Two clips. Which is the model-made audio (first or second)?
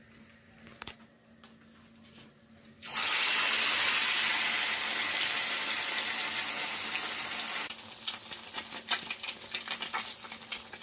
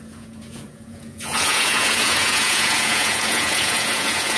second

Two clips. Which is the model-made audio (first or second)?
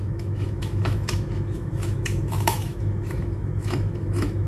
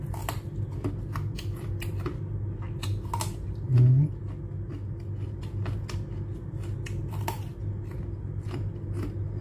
first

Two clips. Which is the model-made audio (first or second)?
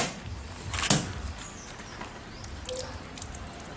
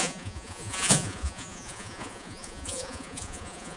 second